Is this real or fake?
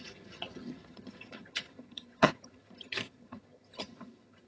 fake